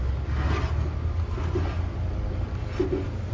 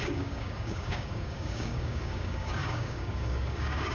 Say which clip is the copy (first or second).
second